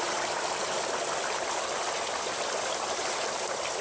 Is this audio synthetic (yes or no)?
no